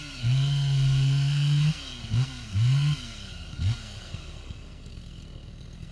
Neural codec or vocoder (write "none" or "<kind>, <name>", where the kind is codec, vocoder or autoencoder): codec, SNAC